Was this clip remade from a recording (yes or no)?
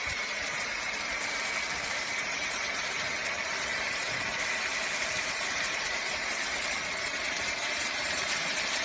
yes